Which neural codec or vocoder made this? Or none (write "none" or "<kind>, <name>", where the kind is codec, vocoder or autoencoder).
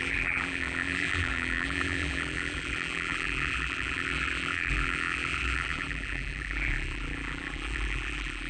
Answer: vocoder, BigVGAN v2